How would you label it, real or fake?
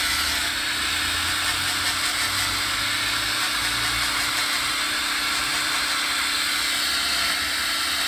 real